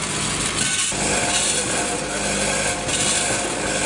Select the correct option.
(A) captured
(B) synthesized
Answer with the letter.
A